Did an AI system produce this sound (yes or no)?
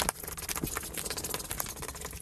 no